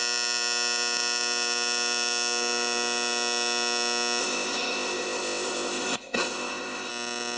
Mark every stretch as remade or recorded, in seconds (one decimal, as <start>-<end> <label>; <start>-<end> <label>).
0.0-4.2 recorded; 4.2-6.9 remade; 6.9-7.4 recorded